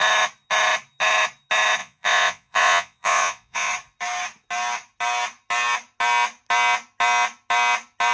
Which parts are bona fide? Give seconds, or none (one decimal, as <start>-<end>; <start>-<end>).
0.0-1.8; 3.7-8.1